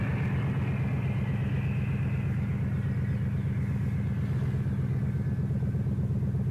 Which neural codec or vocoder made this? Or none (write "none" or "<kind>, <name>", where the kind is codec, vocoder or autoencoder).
none